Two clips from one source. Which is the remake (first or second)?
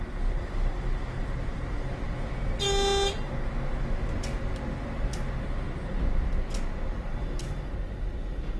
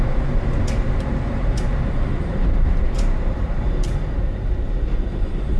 second